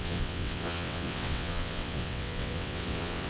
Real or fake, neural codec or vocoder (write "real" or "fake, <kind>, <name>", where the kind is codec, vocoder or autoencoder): fake, vocoder, WaveNeXt